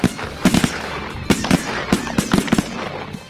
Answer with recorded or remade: recorded